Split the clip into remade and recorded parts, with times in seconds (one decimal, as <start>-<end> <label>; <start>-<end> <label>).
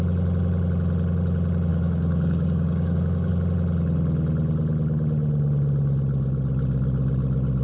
0.0-1.7 recorded; 1.7-3.3 remade; 3.3-7.6 recorded